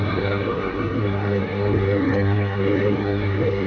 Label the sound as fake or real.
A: fake